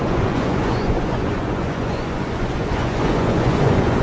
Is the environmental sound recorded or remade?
remade